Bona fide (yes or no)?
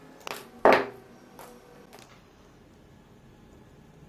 yes